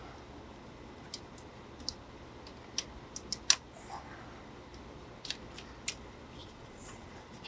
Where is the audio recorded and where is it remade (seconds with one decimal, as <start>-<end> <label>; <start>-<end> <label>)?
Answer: 0.0-6.4 recorded; 6.4-7.5 remade